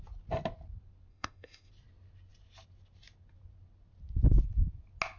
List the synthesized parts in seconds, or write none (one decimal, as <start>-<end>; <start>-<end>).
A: 1.1-1.7